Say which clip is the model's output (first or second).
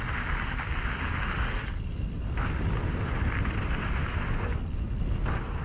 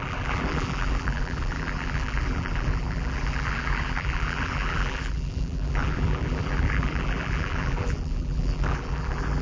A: second